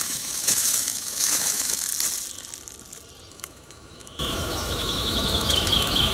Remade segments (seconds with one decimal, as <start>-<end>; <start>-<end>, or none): 0.0-1.9; 3.3-6.1